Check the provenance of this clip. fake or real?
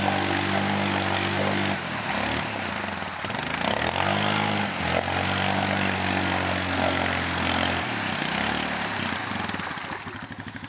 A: real